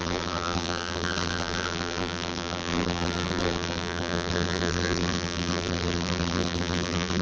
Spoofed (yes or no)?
yes